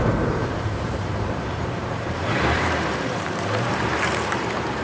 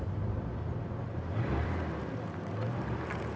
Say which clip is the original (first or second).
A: second